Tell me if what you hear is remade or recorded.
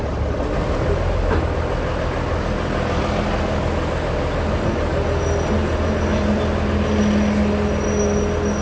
recorded